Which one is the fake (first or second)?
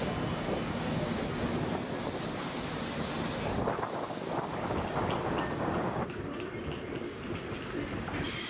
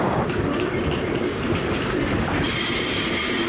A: second